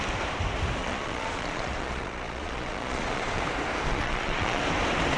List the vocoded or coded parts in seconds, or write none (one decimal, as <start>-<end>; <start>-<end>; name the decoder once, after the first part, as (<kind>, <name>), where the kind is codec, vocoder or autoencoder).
0.8-3.4 (vocoder, Vocos); 3.9-4.6